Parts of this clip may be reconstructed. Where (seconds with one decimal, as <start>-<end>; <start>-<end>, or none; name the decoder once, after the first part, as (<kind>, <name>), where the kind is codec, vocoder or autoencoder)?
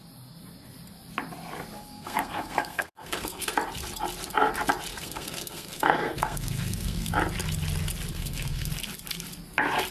1.8-3.5 (codec, SNAC); 4.9-7.1; 8.1-8.7